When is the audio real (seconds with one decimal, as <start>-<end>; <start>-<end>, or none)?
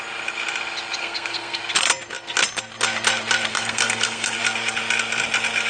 0.0-1.0; 1.6-3.5; 4.4-5.7